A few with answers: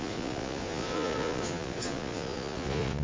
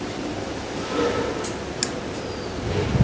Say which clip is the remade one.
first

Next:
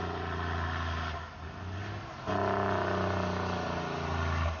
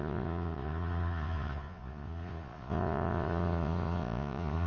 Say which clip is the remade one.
second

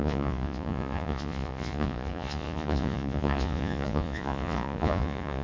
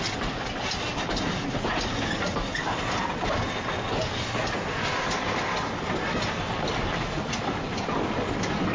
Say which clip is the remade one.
first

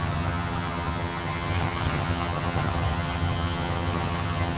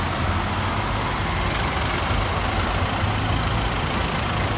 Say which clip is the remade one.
first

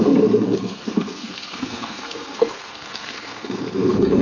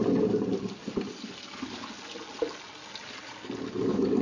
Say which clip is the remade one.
first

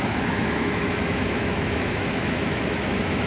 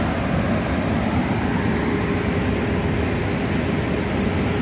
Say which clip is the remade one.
first